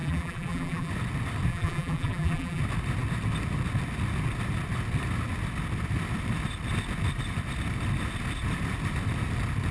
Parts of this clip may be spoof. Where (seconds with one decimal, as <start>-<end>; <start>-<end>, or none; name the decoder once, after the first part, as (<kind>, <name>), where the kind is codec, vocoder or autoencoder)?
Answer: 0.0-0.9 (vocoder, BigVGAN v2); 1.5-2.6